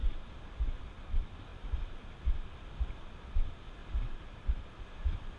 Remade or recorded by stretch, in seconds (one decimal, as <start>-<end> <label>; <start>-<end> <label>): 0.0-0.8 remade; 0.8-3.8 recorded; 3.8-5.4 remade